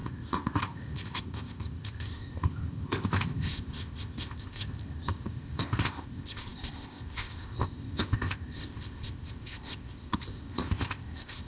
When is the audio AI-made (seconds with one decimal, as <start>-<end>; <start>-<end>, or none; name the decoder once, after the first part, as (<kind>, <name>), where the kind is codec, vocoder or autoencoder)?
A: 0.0-11.5 (codec, ZipCodec)